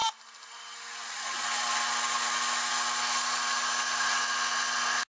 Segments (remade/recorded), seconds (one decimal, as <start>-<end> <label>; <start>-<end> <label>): 0.0-5.1 recorded